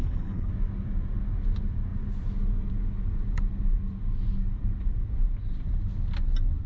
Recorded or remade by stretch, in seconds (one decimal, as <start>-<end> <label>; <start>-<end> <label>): 0.0-0.5 remade; 0.5-6.7 recorded